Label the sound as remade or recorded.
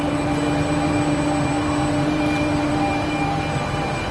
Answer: remade